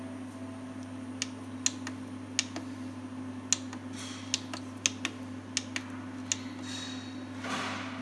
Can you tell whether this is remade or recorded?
recorded